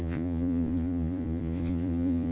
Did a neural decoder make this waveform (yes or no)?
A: yes